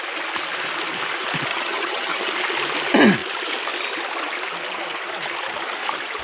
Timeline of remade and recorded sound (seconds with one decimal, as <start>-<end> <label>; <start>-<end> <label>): 0.0-1.5 recorded; 1.5-2.3 remade; 2.3-6.2 recorded